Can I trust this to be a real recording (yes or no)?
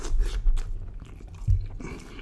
yes